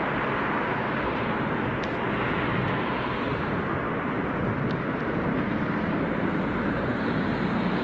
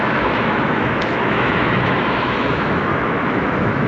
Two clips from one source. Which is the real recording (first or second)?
first